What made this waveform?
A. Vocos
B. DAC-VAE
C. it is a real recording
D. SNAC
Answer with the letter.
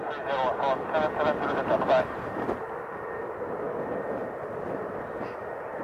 C